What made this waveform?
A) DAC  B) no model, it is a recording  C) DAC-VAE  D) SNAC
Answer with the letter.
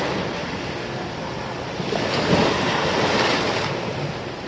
B